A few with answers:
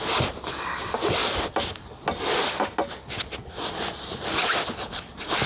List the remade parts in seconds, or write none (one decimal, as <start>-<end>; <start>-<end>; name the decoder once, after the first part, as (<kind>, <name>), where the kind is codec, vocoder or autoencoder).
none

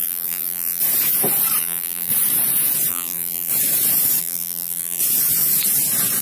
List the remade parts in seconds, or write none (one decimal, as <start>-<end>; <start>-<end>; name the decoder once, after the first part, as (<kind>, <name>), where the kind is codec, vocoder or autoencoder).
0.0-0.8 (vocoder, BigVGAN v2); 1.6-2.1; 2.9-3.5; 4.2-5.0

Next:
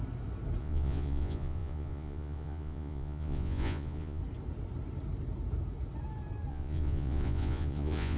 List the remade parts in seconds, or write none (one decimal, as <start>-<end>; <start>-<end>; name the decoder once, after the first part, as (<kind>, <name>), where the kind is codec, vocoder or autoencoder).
0.6-4.2 (vocoder, Vocos); 6.5-8.2

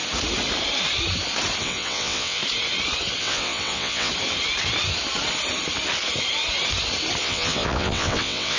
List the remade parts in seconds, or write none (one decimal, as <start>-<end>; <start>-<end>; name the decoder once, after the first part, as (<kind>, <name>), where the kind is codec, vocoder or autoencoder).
1.6-2.4 (vocoder, WaveNeXt); 3.2-4.1; 7.2-8.6

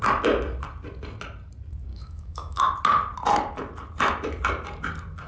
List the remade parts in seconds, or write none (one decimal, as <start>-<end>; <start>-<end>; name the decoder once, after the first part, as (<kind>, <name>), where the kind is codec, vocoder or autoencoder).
1.9-2.6 (autoencoder, DAC-VAE)

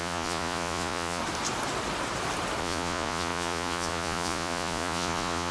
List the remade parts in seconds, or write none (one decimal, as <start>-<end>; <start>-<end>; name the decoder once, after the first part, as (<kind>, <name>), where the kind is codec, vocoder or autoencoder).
0.0-1.2 (vocoder, Vocos); 2.6-5.5

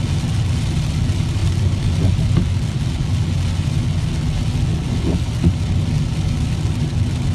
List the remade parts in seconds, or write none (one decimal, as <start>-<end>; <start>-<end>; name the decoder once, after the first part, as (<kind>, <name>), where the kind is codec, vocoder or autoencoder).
none

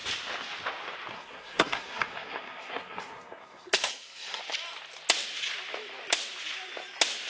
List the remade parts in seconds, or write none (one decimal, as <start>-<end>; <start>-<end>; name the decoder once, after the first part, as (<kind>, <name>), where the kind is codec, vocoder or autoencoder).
1.1-4.4 (codec, SNAC)